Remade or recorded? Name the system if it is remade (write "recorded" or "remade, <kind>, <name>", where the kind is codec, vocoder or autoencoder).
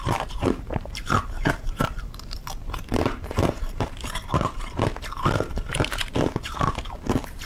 remade, vocoder, BigVGAN v2